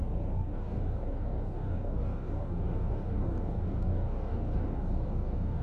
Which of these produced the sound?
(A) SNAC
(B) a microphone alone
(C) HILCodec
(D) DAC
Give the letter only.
D